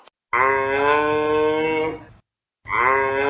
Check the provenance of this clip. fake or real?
real